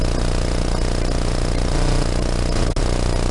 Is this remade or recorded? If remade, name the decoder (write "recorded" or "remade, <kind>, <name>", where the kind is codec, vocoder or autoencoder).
recorded